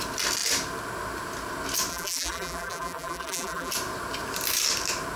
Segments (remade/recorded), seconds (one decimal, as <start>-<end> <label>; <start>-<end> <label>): 0.0-1.9 recorded; 1.9-3.7 remade; 3.7-5.2 recorded